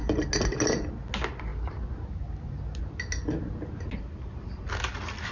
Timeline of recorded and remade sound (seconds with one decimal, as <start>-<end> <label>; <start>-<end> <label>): 0.0-5.3 recorded